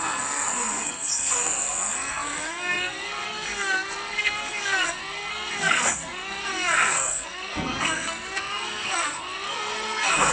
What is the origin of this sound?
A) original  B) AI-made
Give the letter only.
B